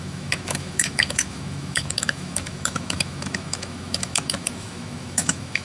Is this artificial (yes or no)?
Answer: yes